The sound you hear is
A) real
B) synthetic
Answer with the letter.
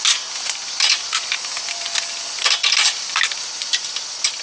A